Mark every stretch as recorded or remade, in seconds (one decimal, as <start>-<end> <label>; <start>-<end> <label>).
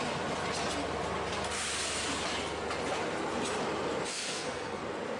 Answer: 0.0-4.1 recorded; 4.1-4.8 remade; 4.8-5.2 recorded